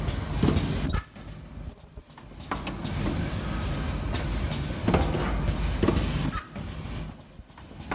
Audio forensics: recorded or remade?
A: recorded